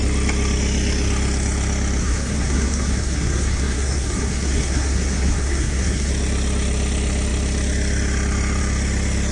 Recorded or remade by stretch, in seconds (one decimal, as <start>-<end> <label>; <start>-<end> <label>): 0.0-2.0 recorded; 2.0-6.1 remade; 6.1-9.3 recorded